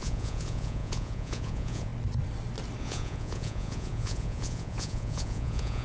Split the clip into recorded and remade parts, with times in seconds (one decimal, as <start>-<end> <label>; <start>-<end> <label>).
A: 0.0-1.9 remade; 1.9-2.8 recorded; 2.8-5.8 remade